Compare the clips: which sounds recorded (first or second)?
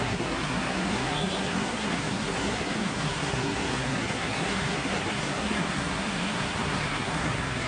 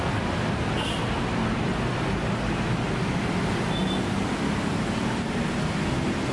second